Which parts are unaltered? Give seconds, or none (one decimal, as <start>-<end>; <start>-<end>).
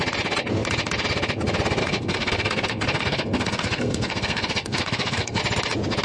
0.0-1.8; 5.4-6.0